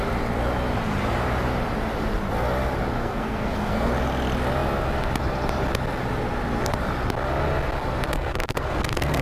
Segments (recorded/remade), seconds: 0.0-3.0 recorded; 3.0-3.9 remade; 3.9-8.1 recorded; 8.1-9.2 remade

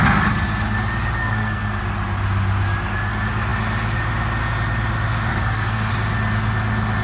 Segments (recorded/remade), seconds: 0.0-1.2 recorded; 1.2-1.8 remade; 1.8-5.3 recorded; 5.3-5.9 remade; 5.9-7.0 recorded